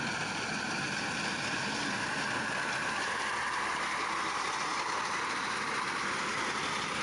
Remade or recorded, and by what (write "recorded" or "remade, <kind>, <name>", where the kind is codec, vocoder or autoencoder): recorded